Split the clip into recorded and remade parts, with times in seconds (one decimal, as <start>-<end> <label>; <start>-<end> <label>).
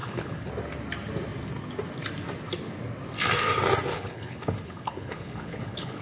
0.0-0.5 remade; 0.5-3.9 recorded; 3.9-6.0 remade